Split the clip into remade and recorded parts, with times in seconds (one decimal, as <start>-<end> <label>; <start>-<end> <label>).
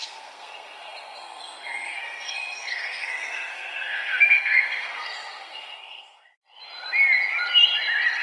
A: 0.0-6.3 remade; 6.3-8.2 recorded